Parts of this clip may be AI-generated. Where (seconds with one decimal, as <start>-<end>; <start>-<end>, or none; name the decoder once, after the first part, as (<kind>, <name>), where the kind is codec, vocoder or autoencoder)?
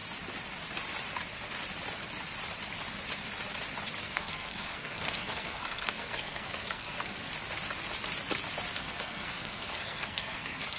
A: 4.0-7.3 (codec, SNAC); 8.8-10.8